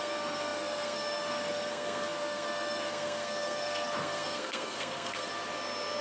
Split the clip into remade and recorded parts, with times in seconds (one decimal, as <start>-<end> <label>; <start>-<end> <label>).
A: 0.0-5.3 remade; 5.3-6.0 recorded